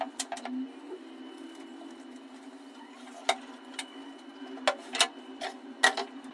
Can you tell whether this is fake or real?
real